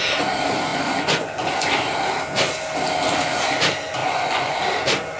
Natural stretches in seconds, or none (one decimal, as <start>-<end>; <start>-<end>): 0.0-0.7; 1.7-4.0; 4.6-5.2